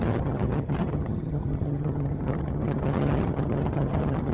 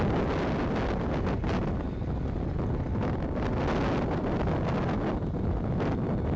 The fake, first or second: first